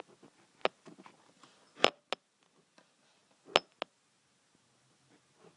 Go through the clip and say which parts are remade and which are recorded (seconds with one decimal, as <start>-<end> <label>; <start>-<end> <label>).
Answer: 0.0-5.6 recorded